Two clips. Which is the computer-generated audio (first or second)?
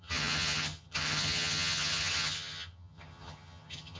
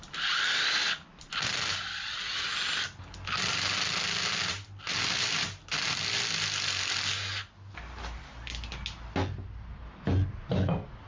first